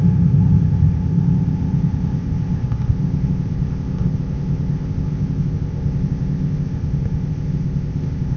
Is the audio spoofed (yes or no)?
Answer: yes